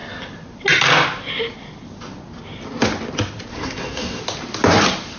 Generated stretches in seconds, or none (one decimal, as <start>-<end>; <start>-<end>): 3.5-4.2